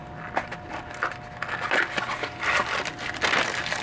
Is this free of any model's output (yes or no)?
yes